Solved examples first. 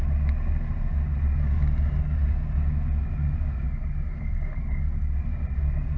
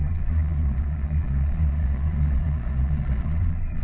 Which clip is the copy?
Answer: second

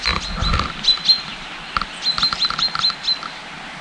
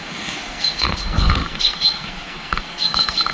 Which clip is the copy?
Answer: second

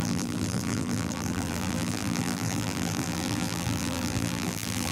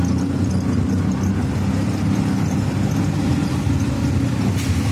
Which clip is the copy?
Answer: first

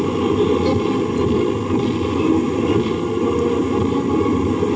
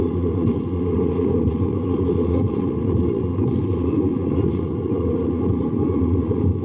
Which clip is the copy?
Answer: second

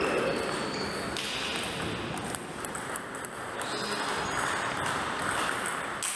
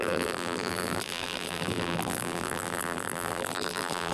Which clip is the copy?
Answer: second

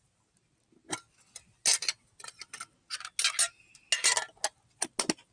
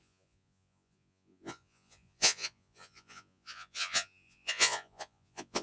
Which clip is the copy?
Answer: second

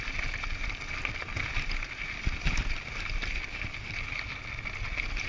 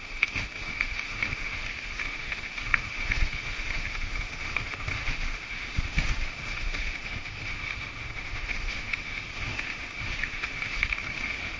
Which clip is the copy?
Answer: second